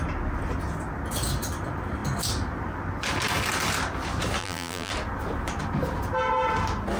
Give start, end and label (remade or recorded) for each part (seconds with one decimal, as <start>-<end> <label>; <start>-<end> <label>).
0.0-4.4 recorded; 4.4-4.9 remade; 4.9-7.0 recorded